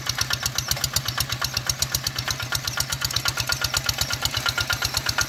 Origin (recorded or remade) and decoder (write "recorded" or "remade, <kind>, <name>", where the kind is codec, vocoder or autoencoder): recorded